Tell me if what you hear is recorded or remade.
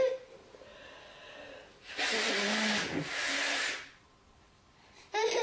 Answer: recorded